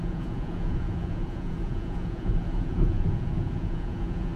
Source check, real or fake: fake